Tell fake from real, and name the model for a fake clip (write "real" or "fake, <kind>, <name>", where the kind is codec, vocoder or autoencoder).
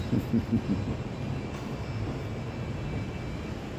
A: real